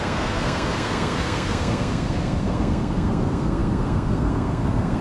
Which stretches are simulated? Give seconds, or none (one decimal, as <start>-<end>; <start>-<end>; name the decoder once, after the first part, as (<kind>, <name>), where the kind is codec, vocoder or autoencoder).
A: 0.0-5.0 (codec, SNAC)